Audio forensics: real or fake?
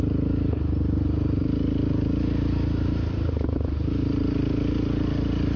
fake